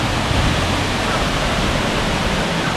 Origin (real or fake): real